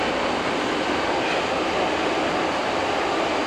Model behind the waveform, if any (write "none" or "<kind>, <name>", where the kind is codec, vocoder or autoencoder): none